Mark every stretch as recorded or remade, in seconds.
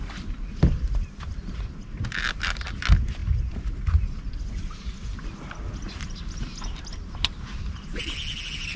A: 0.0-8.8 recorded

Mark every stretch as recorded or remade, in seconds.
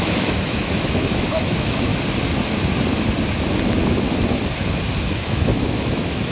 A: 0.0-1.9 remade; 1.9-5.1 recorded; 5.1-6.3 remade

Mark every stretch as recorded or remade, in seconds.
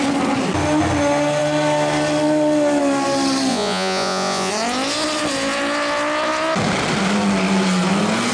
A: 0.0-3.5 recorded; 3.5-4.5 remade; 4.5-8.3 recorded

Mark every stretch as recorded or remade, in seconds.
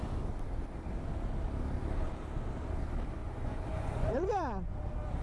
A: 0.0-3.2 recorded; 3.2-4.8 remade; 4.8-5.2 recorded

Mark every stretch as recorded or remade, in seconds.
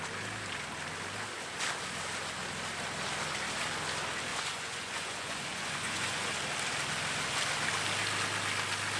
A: 0.0-4.3 recorded; 4.3-6.3 remade; 6.3-9.0 recorded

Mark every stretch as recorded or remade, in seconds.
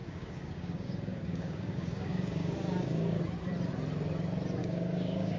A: 0.0-3.2 remade; 3.2-4.6 recorded; 4.6-5.4 remade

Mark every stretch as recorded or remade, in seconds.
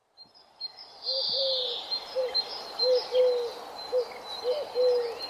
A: 0.0-3.2 remade; 3.2-5.3 recorded